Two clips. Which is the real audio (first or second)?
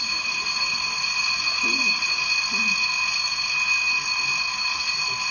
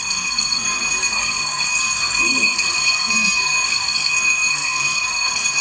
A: first